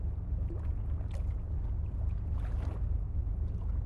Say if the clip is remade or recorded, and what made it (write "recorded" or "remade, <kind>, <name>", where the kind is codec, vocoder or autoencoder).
recorded